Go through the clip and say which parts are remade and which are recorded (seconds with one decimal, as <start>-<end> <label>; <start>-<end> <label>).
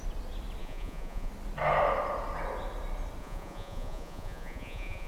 0.0-0.6 recorded; 0.6-1.3 remade; 1.3-3.2 recorded; 3.2-5.1 remade